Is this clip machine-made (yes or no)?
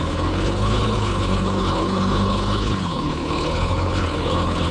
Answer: yes